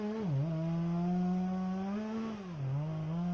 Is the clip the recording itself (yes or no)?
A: yes